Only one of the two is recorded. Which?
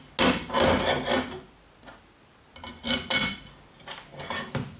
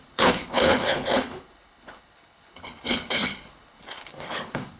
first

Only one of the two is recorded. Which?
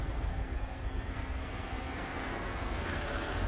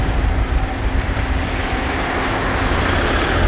second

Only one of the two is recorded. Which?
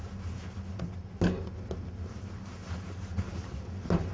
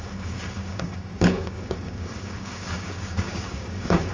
first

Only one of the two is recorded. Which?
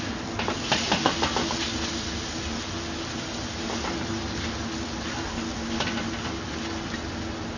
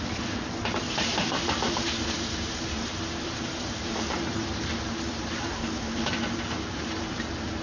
first